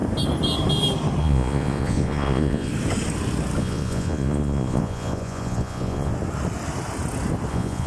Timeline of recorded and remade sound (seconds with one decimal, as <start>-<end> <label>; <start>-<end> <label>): 0.0-1.2 recorded; 1.2-2.7 remade; 2.7-3.6 recorded; 3.6-6.1 remade; 6.1-7.5 recorded; 7.5-7.9 remade